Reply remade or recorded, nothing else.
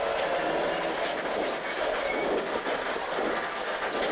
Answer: recorded